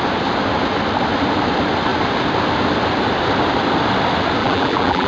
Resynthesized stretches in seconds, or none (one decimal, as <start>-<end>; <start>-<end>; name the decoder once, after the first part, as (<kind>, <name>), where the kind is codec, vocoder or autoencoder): 4.4-5.1 (vocoder, BigVGAN v2)